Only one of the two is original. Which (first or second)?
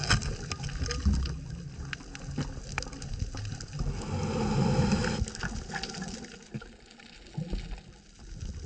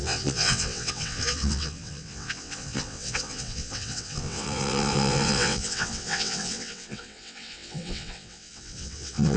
first